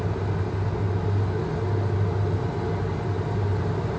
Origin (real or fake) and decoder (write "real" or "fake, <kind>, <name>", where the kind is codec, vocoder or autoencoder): real